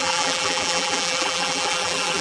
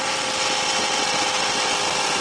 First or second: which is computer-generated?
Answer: first